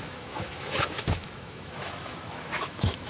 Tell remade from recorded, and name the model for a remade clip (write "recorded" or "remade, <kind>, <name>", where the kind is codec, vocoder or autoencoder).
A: remade, autoencoder, DAC-VAE